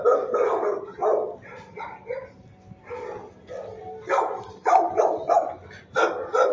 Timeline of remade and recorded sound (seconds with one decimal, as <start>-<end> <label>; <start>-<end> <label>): 0.0-1.5 recorded; 1.5-5.3 remade; 5.3-6.5 recorded